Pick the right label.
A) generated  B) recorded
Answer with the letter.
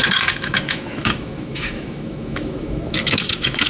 A